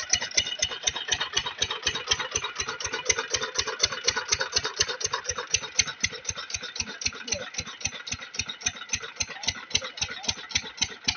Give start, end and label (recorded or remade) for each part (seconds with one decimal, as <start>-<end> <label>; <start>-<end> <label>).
0.0-11.2 remade